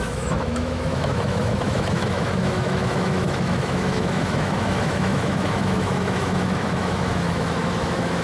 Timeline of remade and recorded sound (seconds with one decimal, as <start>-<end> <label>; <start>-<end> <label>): 0.0-8.2 remade

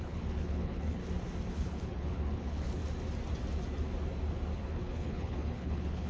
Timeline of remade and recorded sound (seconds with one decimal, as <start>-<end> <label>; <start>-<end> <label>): 0.0-1.0 remade; 1.0-1.5 recorded; 1.5-2.8 remade; 2.8-4.6 recorded; 4.6-6.1 remade

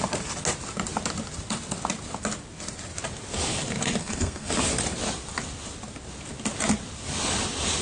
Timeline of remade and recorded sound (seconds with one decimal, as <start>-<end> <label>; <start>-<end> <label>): 0.0-4.0 recorded; 4.0-4.5 remade; 4.5-7.8 recorded

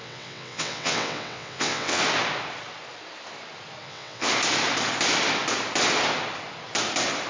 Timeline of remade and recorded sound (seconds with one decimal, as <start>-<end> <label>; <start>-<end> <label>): 0.0-2.0 remade; 2.0-3.8 recorded; 3.8-4.3 remade; 4.3-7.3 recorded